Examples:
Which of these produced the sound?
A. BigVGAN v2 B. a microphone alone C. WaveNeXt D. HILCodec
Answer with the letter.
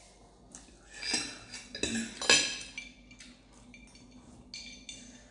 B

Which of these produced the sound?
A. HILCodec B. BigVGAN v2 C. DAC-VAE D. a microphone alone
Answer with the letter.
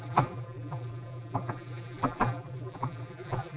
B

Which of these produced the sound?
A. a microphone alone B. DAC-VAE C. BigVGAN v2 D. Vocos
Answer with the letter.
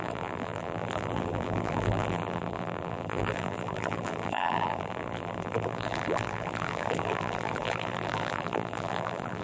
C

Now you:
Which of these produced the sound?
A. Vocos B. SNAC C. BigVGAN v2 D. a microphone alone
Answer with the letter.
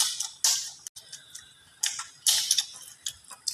D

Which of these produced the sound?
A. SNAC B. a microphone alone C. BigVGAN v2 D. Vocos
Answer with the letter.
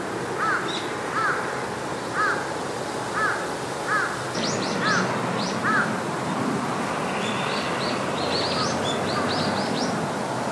B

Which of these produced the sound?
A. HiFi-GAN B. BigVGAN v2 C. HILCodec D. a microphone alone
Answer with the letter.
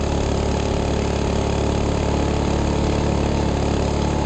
D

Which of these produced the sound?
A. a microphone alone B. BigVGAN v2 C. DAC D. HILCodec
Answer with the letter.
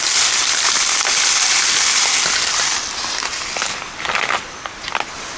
A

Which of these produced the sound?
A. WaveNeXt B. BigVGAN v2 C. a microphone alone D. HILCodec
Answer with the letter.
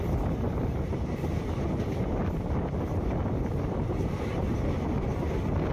C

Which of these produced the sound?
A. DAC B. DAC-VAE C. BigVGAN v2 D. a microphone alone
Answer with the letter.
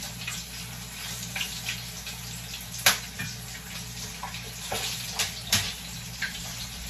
D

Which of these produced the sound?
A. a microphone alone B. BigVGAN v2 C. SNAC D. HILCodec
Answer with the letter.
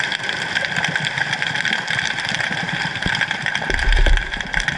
B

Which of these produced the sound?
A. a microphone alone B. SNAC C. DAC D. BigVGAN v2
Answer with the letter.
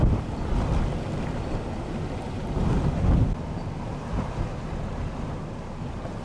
A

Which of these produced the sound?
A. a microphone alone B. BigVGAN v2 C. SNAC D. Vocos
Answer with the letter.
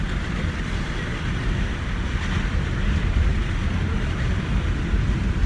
B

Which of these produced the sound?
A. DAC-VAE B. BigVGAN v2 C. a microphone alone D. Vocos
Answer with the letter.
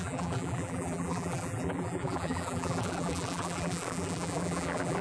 B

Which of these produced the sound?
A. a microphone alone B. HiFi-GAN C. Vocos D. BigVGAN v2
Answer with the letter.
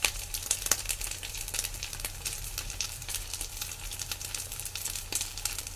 D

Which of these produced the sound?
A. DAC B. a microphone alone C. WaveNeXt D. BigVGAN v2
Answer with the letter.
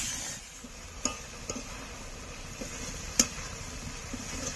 B